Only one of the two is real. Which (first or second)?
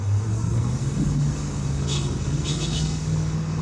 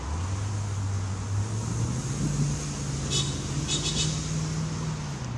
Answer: second